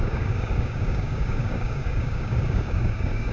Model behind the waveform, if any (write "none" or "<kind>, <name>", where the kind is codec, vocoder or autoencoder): codec, DAC